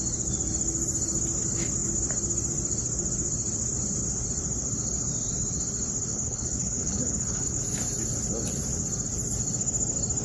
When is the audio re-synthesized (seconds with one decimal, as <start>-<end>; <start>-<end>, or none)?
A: 6.1-7.6